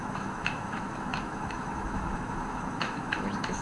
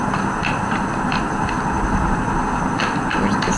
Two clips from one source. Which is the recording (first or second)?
second